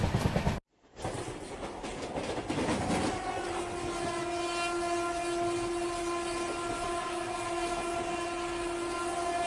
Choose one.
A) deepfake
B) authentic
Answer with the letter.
B